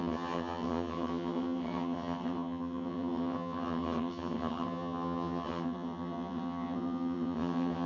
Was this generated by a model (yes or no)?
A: yes